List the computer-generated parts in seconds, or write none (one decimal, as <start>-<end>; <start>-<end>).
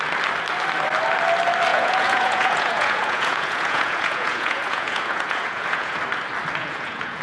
1.7-6.0; 6.6-7.2